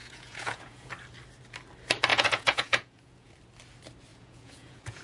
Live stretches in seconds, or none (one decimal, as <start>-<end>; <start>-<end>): 0.9-2.1; 3.3-4.1